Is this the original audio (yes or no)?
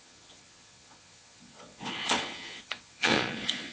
no